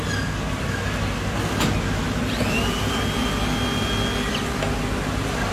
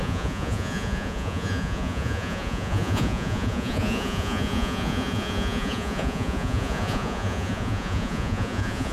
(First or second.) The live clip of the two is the first